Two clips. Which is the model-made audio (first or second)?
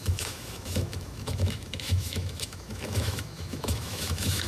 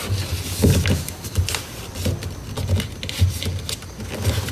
first